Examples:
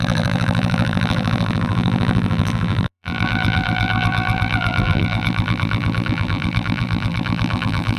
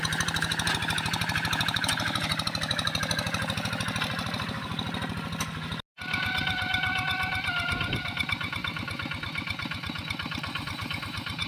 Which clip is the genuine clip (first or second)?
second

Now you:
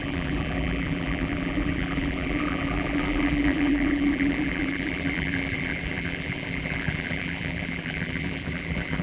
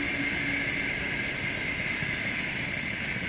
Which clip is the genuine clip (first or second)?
second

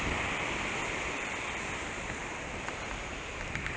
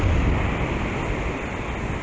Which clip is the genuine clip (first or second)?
second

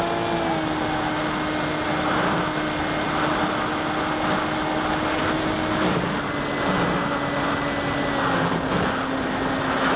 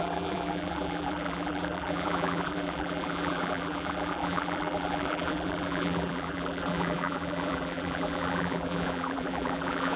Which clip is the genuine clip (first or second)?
first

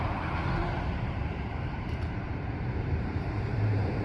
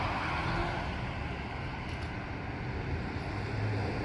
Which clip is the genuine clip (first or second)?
second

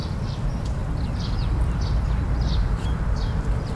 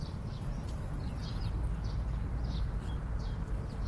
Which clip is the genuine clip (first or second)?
second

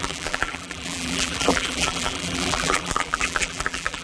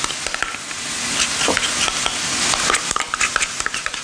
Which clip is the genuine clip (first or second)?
second